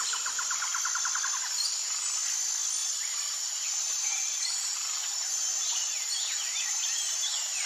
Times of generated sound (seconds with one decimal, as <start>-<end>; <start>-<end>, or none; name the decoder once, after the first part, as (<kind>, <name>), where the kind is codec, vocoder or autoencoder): 2.8-7.7 (vocoder, BigVGAN v2)